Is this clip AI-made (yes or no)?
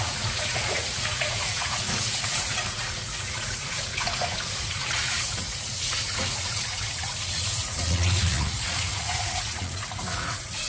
yes